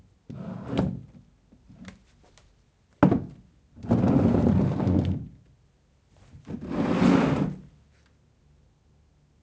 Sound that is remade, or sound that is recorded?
recorded